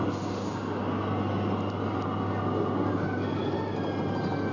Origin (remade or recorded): recorded